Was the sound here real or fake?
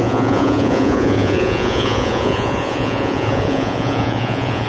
fake